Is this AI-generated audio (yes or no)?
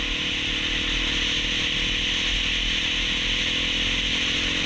no